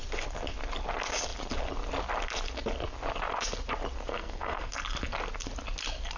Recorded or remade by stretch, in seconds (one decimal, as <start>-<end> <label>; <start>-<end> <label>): 0.0-4.1 recorded; 4.1-4.7 remade; 4.7-6.2 recorded